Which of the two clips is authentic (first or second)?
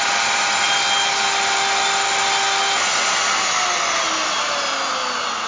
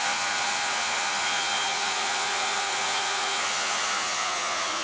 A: first